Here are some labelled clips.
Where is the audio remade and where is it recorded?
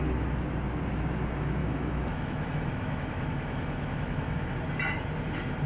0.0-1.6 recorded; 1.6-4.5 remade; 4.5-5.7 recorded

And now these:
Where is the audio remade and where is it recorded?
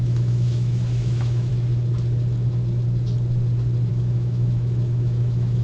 0.0-1.5 remade; 1.5-3.9 recorded; 3.9-5.6 remade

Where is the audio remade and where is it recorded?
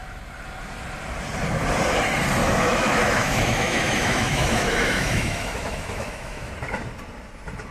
0.0-2.4 recorded; 2.4-6.5 remade; 6.5-7.7 recorded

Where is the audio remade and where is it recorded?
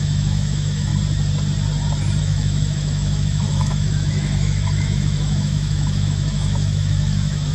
0.0-0.9 remade; 0.9-2.2 recorded; 2.2-7.5 remade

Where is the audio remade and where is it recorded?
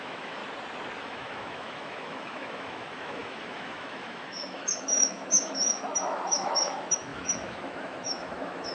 0.0-0.4 remade; 0.4-1.0 recorded; 1.0-8.7 remade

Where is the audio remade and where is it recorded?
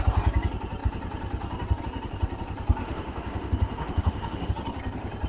0.0-2.8 recorded; 2.8-4.5 remade; 4.5-5.3 recorded